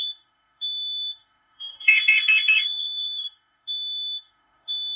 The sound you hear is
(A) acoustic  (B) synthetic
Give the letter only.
B